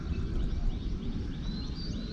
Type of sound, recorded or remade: recorded